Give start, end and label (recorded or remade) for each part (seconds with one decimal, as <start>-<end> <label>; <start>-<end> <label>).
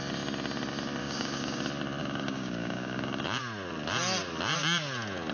0.0-1.0 recorded; 1.0-1.6 remade; 1.6-2.0 recorded; 2.0-3.4 remade; 3.4-5.3 recorded